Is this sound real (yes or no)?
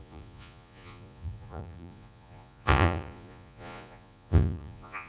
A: no